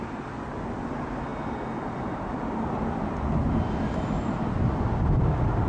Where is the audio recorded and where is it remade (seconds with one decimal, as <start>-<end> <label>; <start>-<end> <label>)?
0.0-5.7 recorded